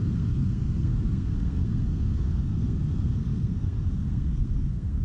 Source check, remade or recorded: remade